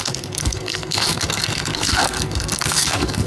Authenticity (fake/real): fake